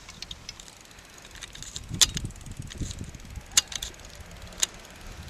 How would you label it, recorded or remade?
recorded